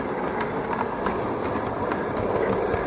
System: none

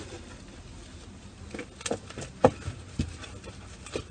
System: none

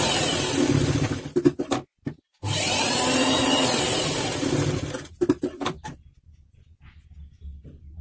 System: none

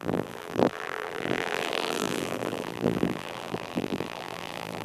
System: vocoder, BigVGAN v2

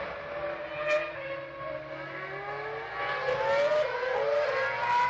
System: none